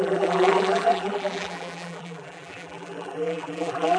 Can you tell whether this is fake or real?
fake